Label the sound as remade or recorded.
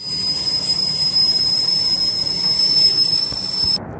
recorded